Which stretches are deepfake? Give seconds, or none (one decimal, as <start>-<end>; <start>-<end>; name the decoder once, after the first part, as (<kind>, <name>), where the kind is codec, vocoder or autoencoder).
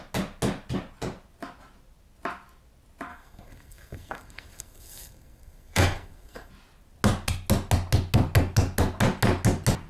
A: 3.1-6.5 (codec, SNAC)